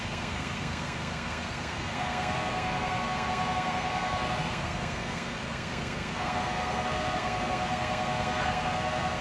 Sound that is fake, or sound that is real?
fake